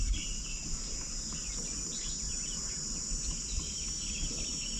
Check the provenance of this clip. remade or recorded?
recorded